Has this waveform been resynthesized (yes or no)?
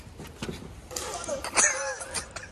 no